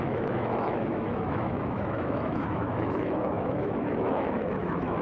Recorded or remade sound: remade